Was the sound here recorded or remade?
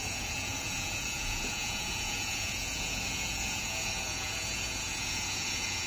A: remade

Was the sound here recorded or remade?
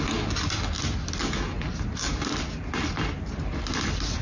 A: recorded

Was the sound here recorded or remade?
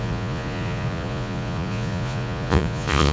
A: remade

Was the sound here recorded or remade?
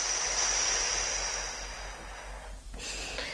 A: recorded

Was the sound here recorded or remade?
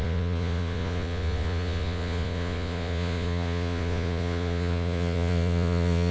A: remade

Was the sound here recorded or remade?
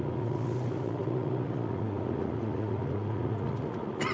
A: remade